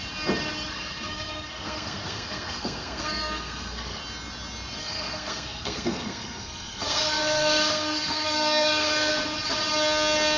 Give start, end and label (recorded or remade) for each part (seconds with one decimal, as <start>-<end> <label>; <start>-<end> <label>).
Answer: 0.0-0.7 recorded; 0.7-4.0 remade; 4.0-4.8 recorded; 4.8-9.1 remade; 9.1-10.4 recorded